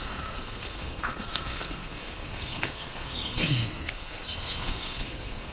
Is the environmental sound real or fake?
fake